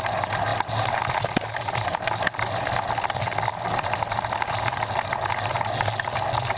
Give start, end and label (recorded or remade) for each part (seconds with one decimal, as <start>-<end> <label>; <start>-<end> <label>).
0.0-6.6 recorded